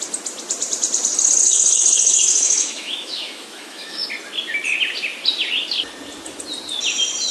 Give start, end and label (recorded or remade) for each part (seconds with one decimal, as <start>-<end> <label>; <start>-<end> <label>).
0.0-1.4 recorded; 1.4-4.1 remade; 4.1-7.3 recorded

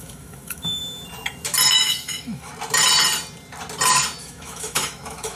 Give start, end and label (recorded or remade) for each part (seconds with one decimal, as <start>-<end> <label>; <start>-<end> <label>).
0.0-0.8 remade; 0.8-1.7 recorded; 1.7-2.5 remade; 2.5-4.2 recorded; 4.2-5.4 remade

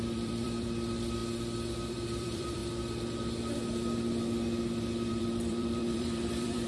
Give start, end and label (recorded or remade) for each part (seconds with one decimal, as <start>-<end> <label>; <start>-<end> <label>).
0.0-1.2 remade; 1.2-1.9 recorded; 1.9-2.6 remade; 2.6-5.1 recorded; 5.1-6.7 remade

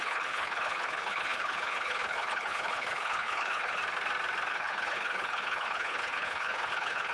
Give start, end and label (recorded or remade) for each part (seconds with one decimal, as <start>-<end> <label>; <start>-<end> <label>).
0.0-3.8 remade; 3.8-4.5 recorded; 4.5-7.1 remade

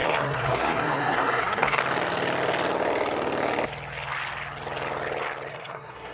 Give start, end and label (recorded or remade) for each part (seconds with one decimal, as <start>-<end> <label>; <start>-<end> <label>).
0.0-1.8 remade; 1.8-5.5 recorded; 5.5-6.1 remade

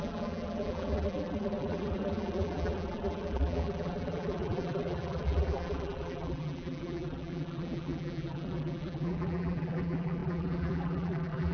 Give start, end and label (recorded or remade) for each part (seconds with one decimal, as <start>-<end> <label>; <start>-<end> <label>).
0.0-11.5 remade